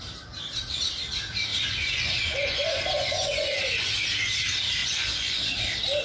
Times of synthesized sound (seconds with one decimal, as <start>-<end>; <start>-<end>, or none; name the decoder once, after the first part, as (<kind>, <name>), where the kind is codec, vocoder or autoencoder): 1.5-3.9 (vocoder, Vocos); 4.8-5.4